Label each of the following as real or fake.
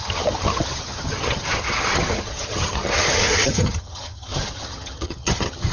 fake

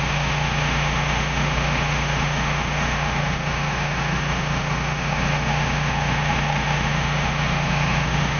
fake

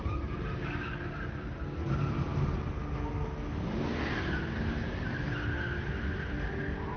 real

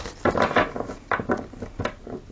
real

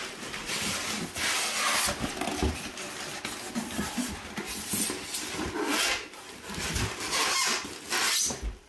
real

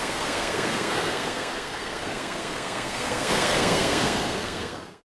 fake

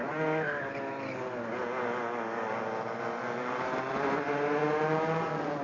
real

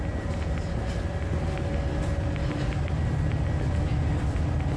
real